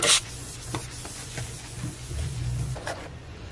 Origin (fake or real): fake